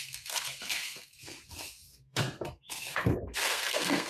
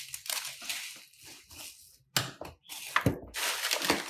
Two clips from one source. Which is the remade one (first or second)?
first